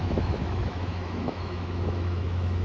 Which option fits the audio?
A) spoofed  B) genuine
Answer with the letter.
A